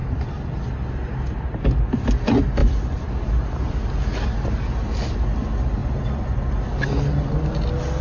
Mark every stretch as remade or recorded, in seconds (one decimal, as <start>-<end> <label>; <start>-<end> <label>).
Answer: 0.0-0.6 remade; 0.6-8.0 recorded